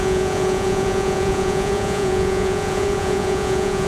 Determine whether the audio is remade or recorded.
remade